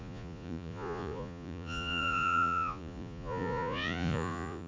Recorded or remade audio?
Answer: remade